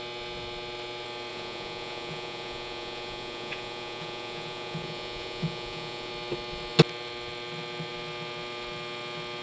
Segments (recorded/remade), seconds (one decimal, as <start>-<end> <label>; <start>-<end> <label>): 0.0-1.3 recorded; 1.3-6.1 remade; 6.1-9.4 recorded